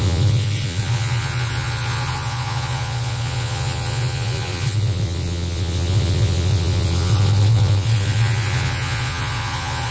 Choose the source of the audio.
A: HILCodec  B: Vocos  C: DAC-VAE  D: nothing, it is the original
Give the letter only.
B